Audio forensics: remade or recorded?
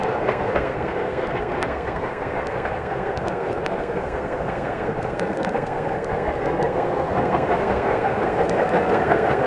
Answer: remade